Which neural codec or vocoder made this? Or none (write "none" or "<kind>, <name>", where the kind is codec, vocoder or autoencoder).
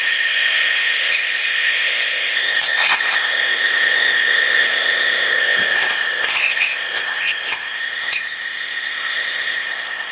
codec, ZipCodec